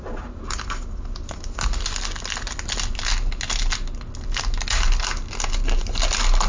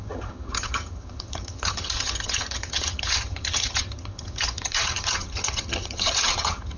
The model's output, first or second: second